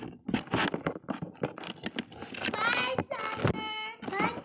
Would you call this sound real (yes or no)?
yes